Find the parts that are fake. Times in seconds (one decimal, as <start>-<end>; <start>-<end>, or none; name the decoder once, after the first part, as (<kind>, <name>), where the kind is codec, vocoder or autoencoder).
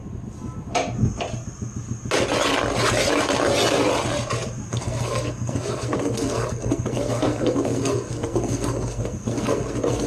4.7-10.1 (codec, SNAC)